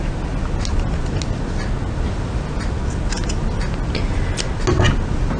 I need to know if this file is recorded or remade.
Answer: recorded